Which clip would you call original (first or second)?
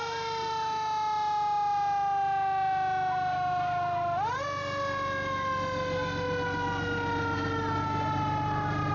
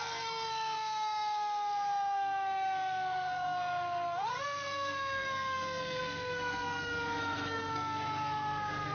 first